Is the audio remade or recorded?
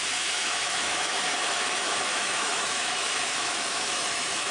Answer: remade